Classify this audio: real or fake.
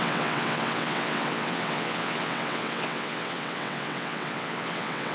fake